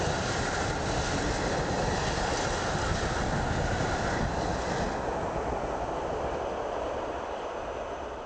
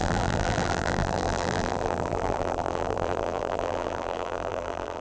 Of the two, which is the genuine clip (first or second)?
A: first